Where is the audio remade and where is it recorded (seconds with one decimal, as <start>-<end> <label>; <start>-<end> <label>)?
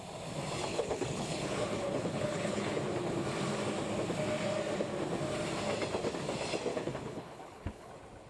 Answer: 0.0-0.7 recorded; 0.7-2.8 remade; 2.8-6.7 recorded; 6.7-7.9 remade; 7.9-8.3 recorded